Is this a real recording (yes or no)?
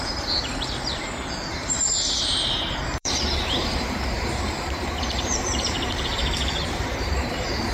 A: no